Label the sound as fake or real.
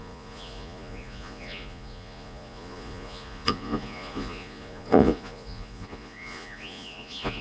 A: fake